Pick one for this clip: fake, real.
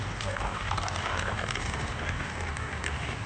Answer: fake